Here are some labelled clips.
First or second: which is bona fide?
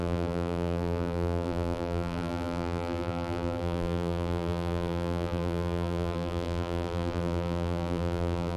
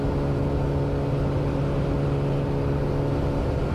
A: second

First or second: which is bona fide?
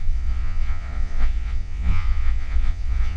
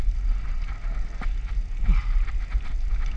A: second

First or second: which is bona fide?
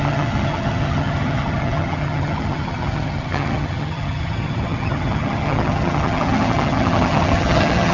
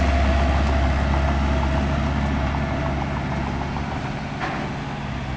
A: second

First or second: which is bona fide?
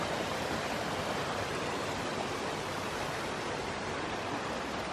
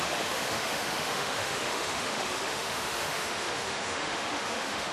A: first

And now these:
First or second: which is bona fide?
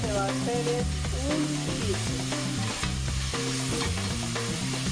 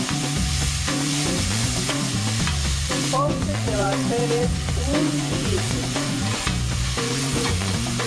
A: first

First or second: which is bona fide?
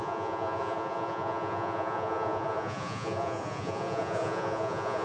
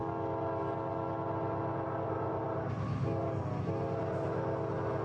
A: second